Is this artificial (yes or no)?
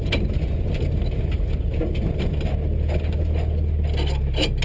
no